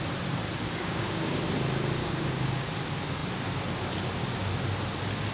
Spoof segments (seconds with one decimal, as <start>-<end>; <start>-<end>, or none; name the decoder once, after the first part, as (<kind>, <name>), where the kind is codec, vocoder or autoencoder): 0.8-1.3 (codec, DAC); 2.0-2.7